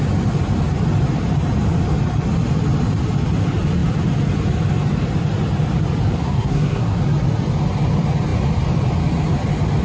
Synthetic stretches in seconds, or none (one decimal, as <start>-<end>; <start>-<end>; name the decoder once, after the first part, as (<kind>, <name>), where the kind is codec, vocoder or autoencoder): 6.2-7.0 (codec, SNAC)

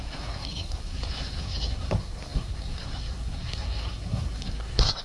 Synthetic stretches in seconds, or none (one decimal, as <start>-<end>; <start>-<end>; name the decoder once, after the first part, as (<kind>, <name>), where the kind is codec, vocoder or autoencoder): 0.0-5.0 (codec, SNAC)

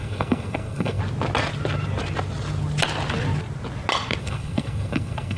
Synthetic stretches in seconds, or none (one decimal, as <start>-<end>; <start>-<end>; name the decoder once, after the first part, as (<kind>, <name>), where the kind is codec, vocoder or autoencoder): 0.0-1.0 (codec, SNAC); 4.2-5.4

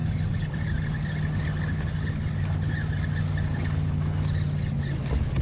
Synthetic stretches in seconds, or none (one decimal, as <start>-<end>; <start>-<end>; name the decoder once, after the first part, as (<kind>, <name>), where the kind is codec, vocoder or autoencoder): none

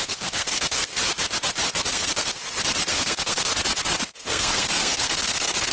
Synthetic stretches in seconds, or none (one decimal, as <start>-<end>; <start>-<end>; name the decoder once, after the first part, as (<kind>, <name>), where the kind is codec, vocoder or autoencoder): 0.0-0.9 (codec, SNAC); 1.9-2.4; 2.9-3.5; 4.0-5.7